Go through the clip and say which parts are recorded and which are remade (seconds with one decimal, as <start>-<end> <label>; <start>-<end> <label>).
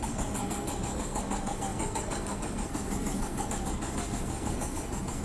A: 0.0-5.2 remade